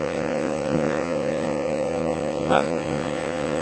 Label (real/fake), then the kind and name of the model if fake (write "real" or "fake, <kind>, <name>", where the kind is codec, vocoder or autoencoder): fake, vocoder, WaveNeXt